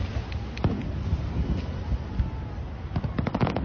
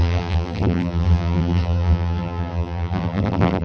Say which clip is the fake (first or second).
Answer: second